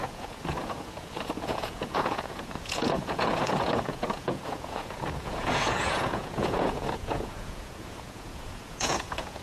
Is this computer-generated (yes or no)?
yes